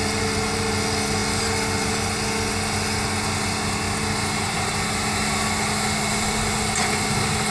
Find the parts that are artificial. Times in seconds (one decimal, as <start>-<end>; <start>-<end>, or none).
6.1-6.6